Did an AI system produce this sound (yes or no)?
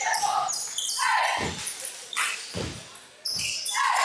no